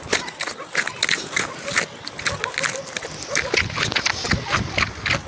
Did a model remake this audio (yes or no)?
no